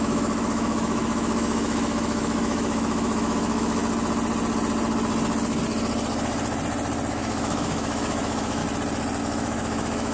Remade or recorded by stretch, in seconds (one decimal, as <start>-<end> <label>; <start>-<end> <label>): 0.0-3.8 remade; 3.8-7.1 recorded; 7.1-8.6 remade; 8.6-9.2 recorded; 9.2-10.1 remade